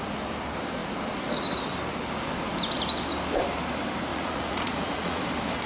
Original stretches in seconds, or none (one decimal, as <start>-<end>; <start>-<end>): 0.0-4.1; 5.2-5.7